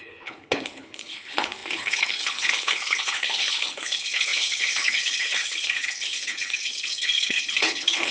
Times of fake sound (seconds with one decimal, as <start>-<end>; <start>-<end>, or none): 0.0-8.1